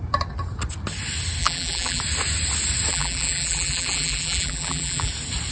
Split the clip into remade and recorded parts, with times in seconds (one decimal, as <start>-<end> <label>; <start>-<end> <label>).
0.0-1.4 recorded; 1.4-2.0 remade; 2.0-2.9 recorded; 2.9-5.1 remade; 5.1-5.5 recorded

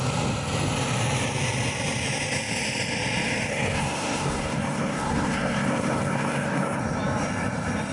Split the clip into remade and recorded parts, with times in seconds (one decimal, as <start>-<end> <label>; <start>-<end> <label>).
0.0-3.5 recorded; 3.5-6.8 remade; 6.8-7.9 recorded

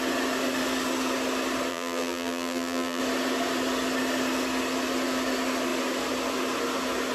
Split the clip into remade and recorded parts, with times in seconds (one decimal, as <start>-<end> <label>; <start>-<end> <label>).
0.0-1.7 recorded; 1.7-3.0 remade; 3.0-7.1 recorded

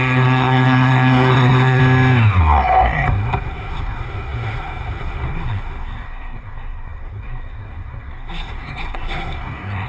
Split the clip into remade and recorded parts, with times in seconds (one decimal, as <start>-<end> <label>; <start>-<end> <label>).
0.0-1.8 remade; 1.8-2.4 recorded; 2.4-9.9 remade

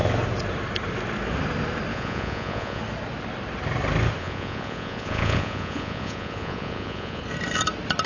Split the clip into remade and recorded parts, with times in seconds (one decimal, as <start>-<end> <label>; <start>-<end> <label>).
0.0-1.9 recorded; 1.9-2.8 remade; 2.8-4.2 recorded; 4.2-7.2 remade; 7.2-8.1 recorded

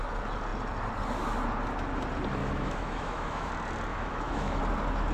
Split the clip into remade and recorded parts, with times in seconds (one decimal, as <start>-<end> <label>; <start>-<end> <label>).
0.0-2.4 recorded; 2.4-3.5 remade; 3.5-3.9 recorded; 3.9-4.6 remade; 4.6-5.1 recorded

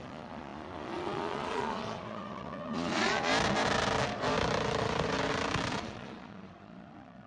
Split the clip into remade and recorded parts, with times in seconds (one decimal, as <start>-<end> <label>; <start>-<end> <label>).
0.0-3.3 remade; 3.3-5.7 recorded; 5.7-7.3 remade